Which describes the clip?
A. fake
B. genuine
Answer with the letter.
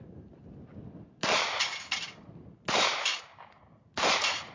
B